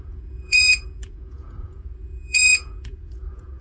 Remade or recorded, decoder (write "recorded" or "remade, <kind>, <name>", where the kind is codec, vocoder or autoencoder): remade, vocoder, Vocos